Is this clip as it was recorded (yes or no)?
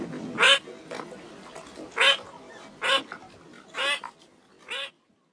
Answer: yes